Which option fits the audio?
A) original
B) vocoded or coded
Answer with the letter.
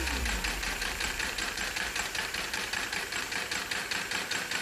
B